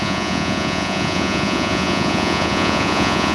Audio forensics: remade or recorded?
remade